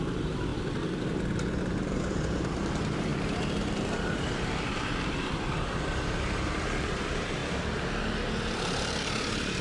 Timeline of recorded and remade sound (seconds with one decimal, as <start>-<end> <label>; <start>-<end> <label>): 0.0-0.5 remade; 0.5-1.6 recorded; 1.6-7.4 remade; 7.4-8.5 recorded; 8.5-9.6 remade